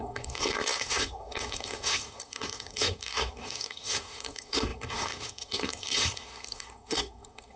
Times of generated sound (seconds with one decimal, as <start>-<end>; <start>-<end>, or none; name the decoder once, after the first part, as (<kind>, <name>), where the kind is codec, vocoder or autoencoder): 0.0-7.6 (codec, SNAC)